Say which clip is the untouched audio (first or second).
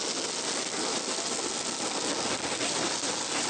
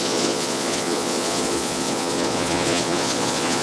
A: first